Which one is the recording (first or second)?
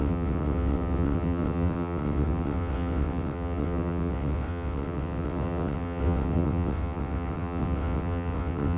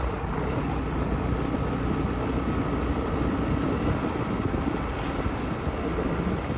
second